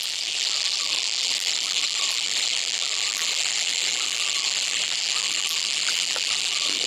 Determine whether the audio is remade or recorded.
remade